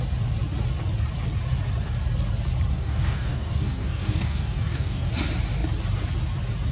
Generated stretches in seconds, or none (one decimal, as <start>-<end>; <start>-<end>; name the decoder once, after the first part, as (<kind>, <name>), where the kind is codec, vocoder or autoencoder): 2.7-5.1 (codec, DAC)